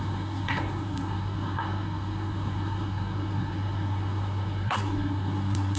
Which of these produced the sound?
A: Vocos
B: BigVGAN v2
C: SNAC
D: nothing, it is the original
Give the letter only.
C